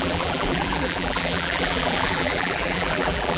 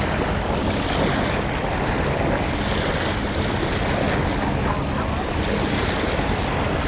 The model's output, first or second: first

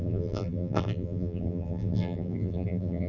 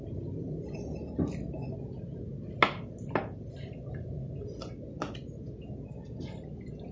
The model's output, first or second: first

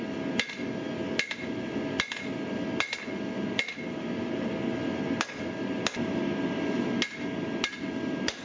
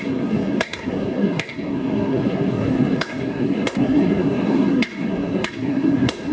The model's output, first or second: second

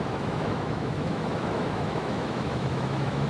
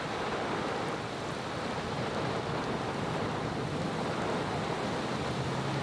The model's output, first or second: first